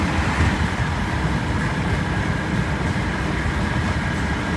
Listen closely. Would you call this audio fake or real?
real